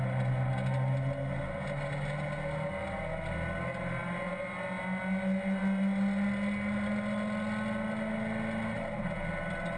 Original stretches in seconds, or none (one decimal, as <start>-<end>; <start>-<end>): 0.0-9.8